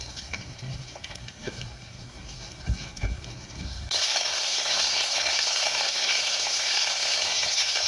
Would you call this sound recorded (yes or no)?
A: no